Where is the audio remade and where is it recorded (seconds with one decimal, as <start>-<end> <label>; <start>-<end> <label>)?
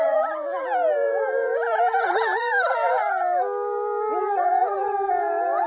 0.0-3.0 remade; 3.0-4.4 recorded; 4.4-5.7 remade